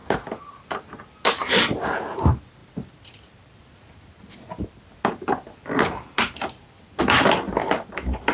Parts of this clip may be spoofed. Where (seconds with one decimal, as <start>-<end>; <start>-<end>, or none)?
none